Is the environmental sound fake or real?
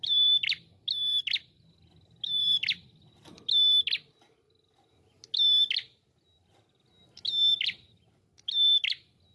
real